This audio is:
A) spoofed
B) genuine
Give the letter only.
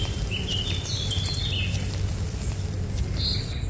B